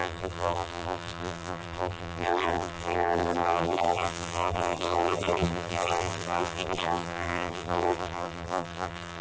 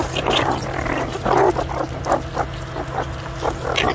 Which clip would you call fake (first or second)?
first